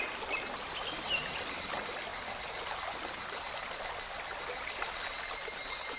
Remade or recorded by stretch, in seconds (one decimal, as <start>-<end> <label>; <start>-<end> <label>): 0.0-2.1 recorded; 2.1-5.0 remade; 5.0-6.0 recorded